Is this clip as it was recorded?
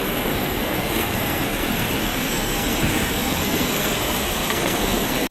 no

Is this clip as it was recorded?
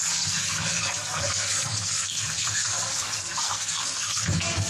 no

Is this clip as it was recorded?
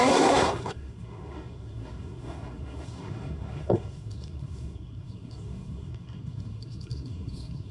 no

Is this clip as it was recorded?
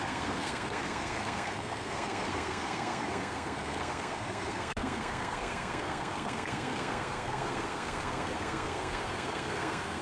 no